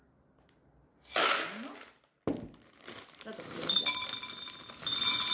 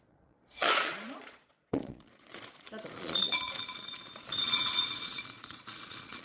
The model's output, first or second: second